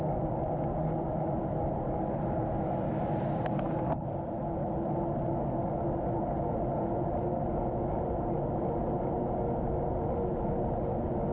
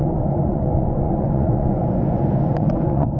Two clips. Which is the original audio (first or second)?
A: first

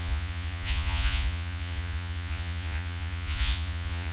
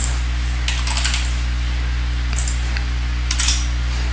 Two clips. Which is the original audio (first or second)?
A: second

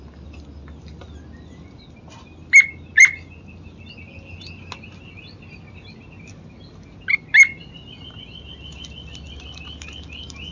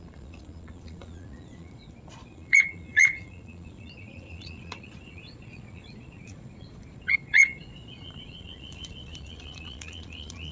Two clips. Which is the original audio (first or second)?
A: first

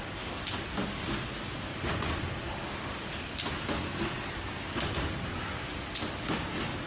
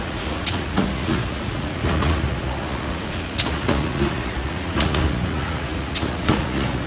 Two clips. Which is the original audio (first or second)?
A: first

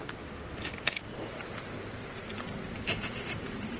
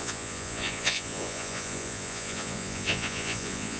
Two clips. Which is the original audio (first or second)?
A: first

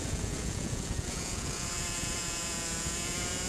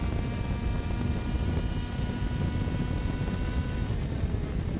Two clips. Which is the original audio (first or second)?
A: second